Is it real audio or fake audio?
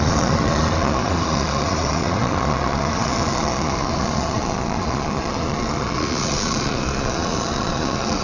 fake